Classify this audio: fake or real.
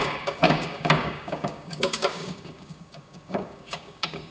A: fake